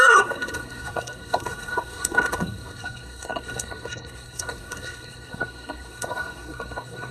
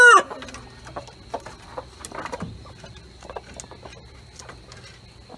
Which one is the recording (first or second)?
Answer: second